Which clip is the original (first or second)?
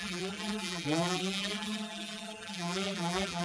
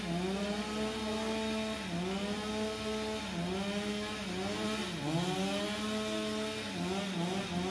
second